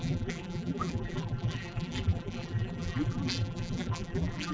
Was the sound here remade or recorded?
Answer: remade